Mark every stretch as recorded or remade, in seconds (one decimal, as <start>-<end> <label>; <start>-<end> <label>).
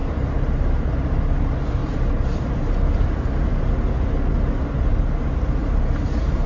0.0-1.1 remade; 1.1-1.8 recorded; 1.8-3.7 remade; 3.7-5.6 recorded; 5.6-6.5 remade